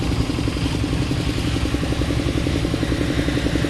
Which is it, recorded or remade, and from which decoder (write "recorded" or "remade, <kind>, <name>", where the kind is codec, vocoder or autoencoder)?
recorded